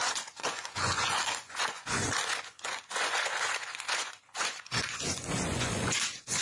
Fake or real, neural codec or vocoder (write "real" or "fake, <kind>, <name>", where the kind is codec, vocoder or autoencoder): fake, vocoder, Vocos